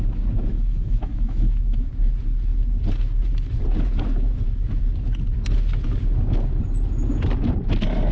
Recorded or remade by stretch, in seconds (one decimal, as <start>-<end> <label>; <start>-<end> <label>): 0.0-0.5 recorded; 0.5-1.9 remade; 1.9-8.1 recorded